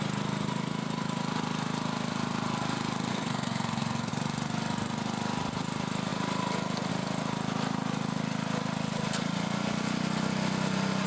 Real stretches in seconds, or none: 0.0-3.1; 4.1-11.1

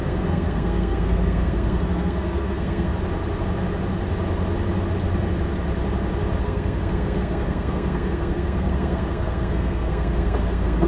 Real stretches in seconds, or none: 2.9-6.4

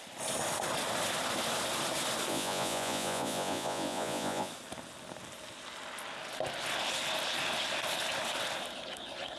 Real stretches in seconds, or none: 0.0-2.3; 4.5-9.4

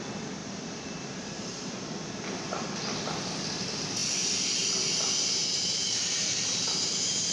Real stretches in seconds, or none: 0.0-0.4; 1.7-5.4